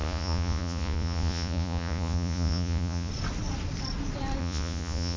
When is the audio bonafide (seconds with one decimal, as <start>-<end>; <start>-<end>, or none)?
3.1-4.4